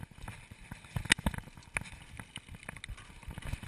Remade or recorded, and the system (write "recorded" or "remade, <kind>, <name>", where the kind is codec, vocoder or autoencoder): recorded